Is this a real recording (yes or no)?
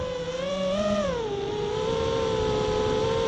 yes